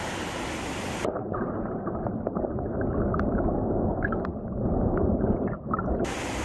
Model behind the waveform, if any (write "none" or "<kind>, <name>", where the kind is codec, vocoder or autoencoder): none